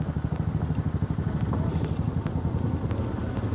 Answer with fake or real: real